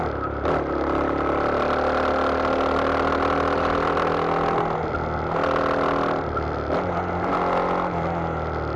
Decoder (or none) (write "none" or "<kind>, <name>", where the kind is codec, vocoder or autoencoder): none